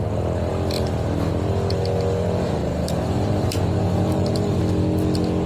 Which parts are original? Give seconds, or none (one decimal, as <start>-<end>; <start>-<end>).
0.0-2.6; 4.6-5.5